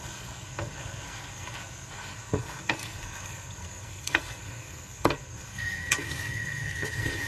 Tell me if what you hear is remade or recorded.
remade